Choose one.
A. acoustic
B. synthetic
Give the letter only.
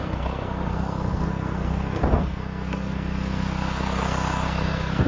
B